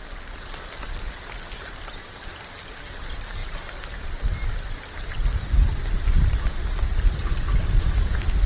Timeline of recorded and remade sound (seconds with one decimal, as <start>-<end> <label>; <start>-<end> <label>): 0.0-8.5 recorded